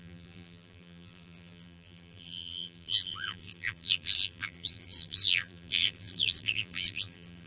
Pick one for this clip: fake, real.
fake